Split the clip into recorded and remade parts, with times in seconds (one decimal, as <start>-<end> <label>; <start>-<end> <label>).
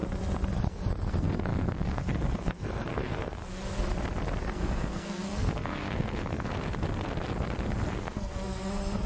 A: 0.0-0.5 recorded; 0.5-3.4 remade; 3.4-4.4 recorded; 4.4-6.5 remade; 6.5-7.9 recorded; 7.9-9.1 remade